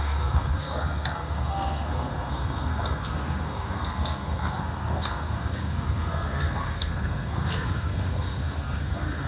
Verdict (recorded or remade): remade